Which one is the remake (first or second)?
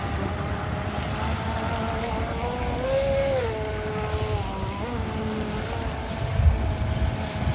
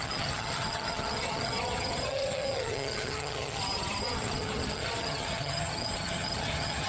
second